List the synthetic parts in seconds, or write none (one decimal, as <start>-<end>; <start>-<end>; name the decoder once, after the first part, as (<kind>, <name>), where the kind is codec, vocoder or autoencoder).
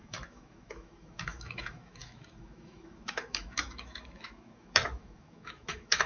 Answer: 0.0-6.1 (autoencoder, DAC-VAE)